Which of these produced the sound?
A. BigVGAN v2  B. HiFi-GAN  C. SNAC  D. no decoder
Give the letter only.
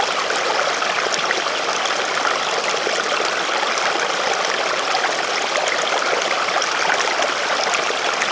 D